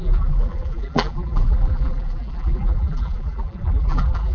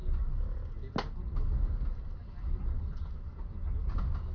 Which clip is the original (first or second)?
second